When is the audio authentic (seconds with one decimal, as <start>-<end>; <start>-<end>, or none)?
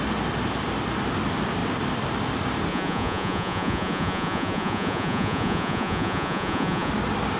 0.0-2.7; 6.9-7.4